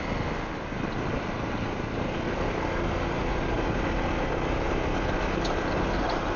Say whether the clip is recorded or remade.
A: recorded